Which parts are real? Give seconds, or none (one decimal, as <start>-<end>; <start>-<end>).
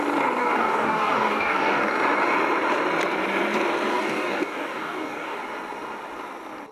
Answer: 0.0-0.4; 1.9-3.9; 5.4-6.7